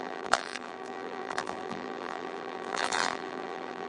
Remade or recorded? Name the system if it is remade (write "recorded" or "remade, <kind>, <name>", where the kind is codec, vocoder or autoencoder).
remade, vocoder, BigVGAN v2